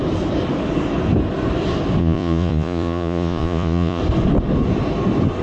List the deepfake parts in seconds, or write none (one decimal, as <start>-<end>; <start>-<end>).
2.0-4.0